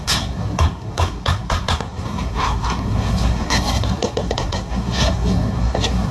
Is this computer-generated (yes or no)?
yes